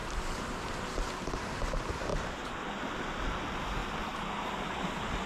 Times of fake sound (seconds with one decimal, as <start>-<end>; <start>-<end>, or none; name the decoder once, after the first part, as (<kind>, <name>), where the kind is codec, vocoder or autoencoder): 0.0-1.4 (vocoder, BigVGAN v2); 2.1-2.8